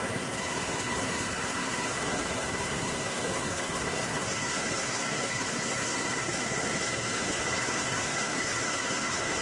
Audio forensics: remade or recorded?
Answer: remade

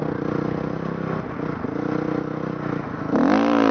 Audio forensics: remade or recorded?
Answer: recorded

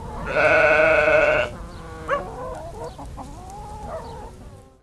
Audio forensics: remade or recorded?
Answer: recorded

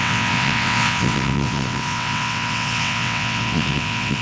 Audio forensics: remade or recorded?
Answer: remade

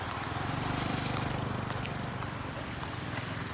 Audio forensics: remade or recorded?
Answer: remade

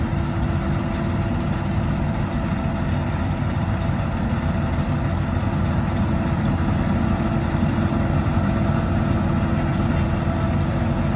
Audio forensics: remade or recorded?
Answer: recorded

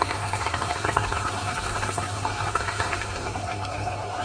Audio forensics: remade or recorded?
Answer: remade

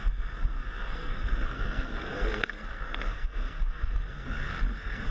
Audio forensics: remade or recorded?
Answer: remade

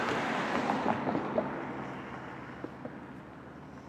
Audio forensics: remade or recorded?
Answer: recorded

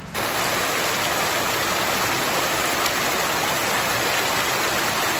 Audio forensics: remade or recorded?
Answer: recorded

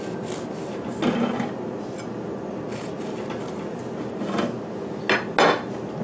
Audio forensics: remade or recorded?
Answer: recorded